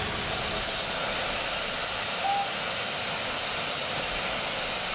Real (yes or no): yes